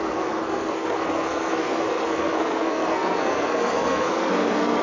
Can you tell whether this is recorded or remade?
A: remade